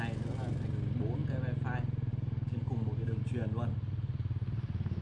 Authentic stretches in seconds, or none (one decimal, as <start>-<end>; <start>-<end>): 0.0-2.1; 3.2-5.0